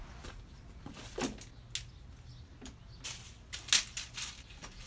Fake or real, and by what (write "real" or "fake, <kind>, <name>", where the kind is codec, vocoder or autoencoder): real